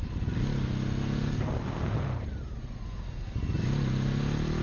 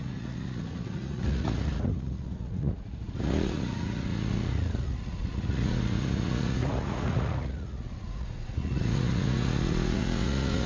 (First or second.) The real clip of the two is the first